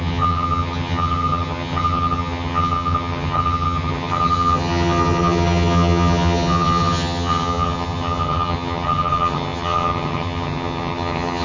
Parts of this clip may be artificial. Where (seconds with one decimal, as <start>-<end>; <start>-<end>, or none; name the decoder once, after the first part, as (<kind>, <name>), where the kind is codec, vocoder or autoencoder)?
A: 0.0-11.4 (vocoder, HiFi-GAN)